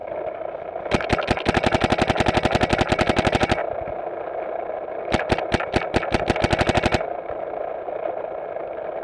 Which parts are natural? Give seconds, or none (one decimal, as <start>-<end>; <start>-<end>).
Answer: 0.0-9.0